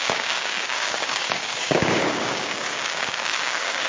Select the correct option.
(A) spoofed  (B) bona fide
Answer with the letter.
A